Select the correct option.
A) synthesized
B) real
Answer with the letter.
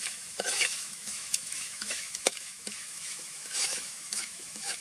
A